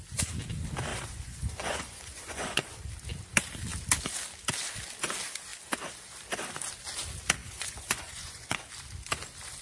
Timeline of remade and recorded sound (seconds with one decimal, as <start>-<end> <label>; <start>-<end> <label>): 0.0-0.9 recorded; 0.9-2.9 remade; 2.9-7.4 recorded; 7.4-8.7 remade; 8.7-9.6 recorded